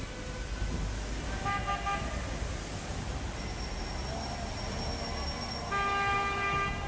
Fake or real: real